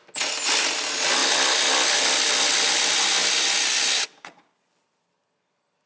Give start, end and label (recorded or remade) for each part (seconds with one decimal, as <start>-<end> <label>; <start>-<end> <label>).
0.0-5.9 recorded